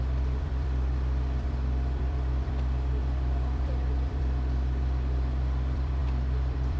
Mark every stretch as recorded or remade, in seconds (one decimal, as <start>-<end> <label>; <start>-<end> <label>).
0.0-6.8 remade